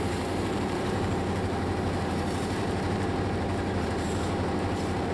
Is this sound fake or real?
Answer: fake